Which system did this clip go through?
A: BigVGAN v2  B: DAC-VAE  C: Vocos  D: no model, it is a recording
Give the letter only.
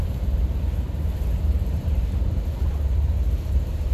A